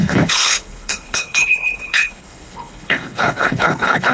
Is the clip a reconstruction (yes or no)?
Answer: yes